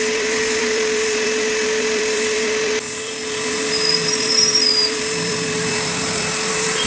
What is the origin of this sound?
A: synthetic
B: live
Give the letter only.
A